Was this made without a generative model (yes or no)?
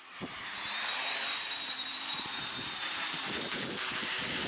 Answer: no